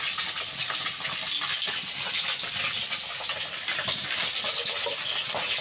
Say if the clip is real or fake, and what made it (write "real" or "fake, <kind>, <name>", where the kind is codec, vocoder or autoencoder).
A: real